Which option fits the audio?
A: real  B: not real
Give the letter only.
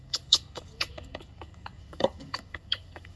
B